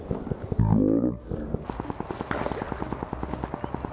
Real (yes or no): yes